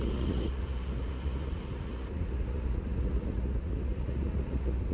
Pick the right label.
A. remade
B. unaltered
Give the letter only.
A